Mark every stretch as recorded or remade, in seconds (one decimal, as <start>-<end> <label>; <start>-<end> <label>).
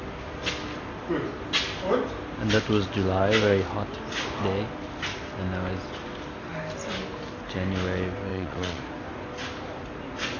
0.0-8.3 recorded; 8.3-8.8 remade; 8.8-10.4 recorded